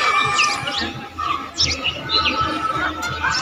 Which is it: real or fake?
real